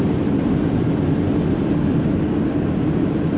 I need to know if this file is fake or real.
real